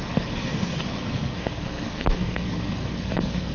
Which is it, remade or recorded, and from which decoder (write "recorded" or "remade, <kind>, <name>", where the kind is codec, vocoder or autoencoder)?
remade, codec, SNAC